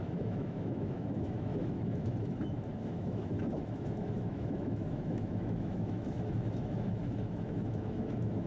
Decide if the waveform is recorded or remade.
remade